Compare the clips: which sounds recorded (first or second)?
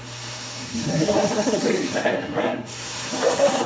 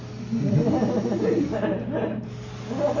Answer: second